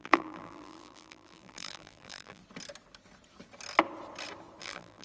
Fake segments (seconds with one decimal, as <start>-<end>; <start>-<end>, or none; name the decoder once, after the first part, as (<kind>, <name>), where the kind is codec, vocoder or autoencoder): 0.0-2.4 (vocoder, BigVGAN v2); 4.6-5.0